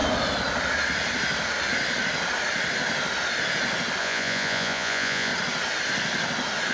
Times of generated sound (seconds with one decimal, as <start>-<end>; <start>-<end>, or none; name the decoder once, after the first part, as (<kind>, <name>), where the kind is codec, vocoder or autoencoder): 4.0-5.3 (vocoder, Vocos)